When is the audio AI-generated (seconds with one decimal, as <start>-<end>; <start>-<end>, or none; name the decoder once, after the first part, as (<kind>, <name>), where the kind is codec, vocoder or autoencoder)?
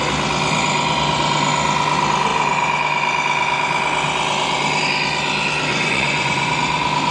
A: 5.7-6.5 (vocoder, Vocos)